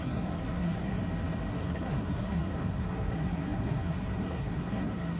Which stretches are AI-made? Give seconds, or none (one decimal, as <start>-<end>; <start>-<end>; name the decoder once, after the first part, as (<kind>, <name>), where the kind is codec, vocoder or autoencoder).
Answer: 0.0-1.0 (codec, SNAC); 1.5-5.2